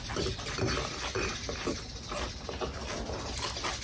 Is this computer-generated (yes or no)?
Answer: no